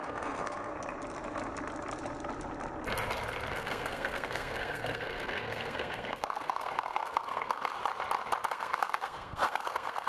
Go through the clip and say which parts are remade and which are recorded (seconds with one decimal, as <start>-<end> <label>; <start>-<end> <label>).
0.0-0.7 remade; 0.7-3.5 recorded; 3.5-7.8 remade; 7.8-8.5 recorded; 8.5-10.1 remade